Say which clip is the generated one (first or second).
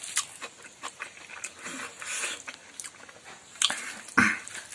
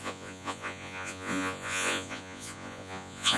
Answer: second